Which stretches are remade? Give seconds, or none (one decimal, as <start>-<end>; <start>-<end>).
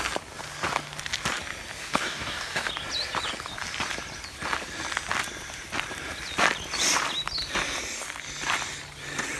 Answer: 1.8-2.7